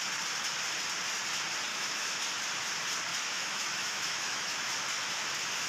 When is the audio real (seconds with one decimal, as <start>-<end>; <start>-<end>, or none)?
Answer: 0.0-1.7; 2.2-3.1; 4.7-5.7